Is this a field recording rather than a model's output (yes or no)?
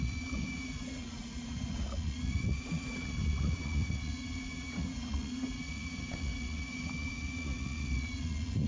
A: no